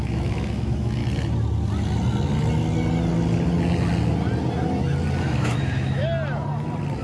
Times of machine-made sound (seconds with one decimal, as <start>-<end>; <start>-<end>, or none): 0.0-1.0; 5.2-6.0

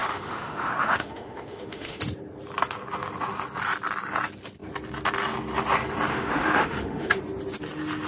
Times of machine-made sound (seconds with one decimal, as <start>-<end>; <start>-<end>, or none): 0.0-2.0; 6.1-7.2

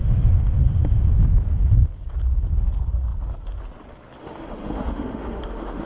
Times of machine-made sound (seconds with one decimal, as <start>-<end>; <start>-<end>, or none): 0.0-1.2; 4.2-5.9

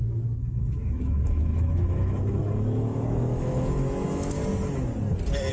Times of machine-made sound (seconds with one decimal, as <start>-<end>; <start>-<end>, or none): 0.0-4.4

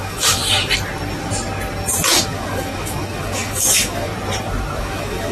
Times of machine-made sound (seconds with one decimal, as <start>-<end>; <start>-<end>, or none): 0.0-0.4; 2.1-4.1; 4.8-5.3

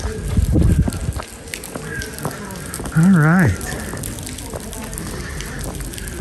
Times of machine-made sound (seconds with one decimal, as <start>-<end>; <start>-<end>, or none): none

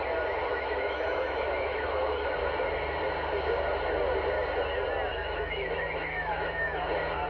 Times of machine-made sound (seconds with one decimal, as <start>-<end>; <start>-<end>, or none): 0.5-2.3; 5.1-6.8

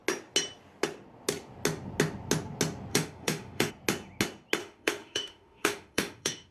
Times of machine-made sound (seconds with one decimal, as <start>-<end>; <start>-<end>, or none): 2.9-3.7; 4.6-6.5